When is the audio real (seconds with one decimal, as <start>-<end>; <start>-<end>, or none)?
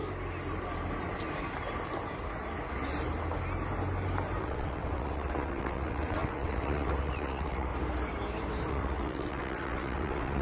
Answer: 0.0-4.4; 7.7-8.7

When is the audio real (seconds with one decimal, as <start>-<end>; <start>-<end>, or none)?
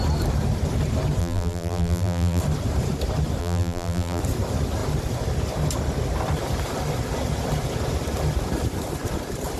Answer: 0.0-1.2; 2.4-3.4; 4.2-9.6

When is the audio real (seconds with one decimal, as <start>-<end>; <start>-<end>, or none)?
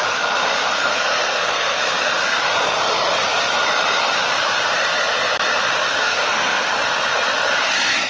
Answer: 0.0-0.7; 1.8-6.0; 6.7-8.1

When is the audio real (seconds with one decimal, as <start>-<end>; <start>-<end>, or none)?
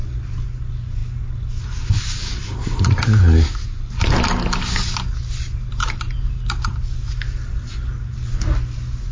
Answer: 0.0-9.1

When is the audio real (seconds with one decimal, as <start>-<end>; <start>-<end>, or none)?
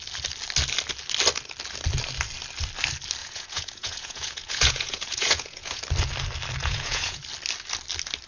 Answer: 0.0-3.2; 5.8-6.6; 7.2-8.3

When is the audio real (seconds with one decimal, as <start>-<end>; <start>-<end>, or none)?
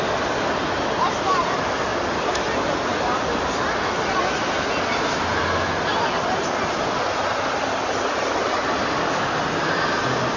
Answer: 0.0-10.4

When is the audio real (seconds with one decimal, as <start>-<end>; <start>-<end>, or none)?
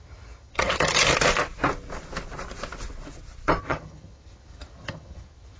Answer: 1.1-3.6